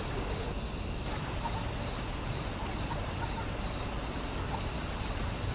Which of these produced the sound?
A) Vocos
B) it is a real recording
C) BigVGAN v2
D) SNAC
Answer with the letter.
B